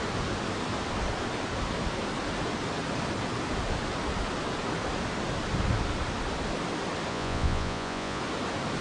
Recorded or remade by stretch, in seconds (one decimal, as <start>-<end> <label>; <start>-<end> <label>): 0.0-7.1 recorded; 7.1-8.2 remade; 8.2-8.8 recorded